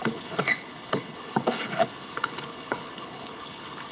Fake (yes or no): yes